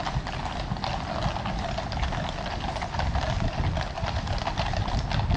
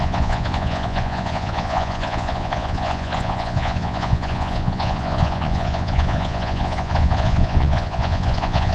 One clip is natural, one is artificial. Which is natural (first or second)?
first